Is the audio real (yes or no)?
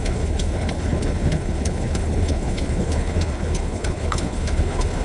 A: no